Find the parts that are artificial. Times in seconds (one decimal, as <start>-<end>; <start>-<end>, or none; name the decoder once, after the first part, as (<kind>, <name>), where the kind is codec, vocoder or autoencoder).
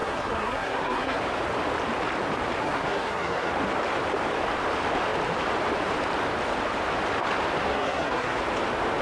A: 0.0-1.2 (codec, SNAC); 2.6-3.5; 7.7-8.4